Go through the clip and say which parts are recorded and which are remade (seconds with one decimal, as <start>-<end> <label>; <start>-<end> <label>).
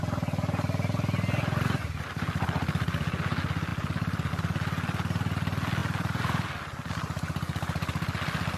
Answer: 0.0-3.7 recorded; 3.7-4.3 remade; 4.3-8.6 recorded